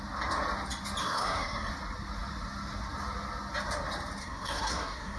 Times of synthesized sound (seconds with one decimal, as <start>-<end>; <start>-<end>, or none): 1.0-1.7; 4.2-5.2